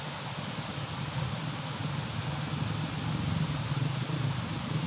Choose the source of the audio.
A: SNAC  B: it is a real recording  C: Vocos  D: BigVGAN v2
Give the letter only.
B